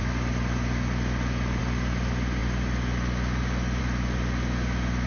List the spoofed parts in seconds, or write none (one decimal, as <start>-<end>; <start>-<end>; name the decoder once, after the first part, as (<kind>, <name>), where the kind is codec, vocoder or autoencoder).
none